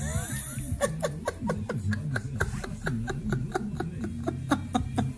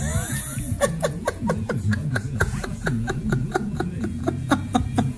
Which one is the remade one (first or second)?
second